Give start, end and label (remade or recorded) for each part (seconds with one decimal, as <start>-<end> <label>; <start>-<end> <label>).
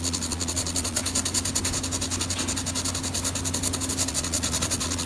0.0-1.0 remade; 1.0-4.1 recorded; 4.1-5.1 remade